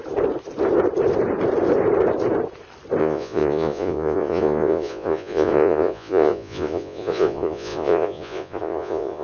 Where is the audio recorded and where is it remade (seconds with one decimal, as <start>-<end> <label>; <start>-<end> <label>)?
0.0-3.0 recorded; 3.0-9.2 remade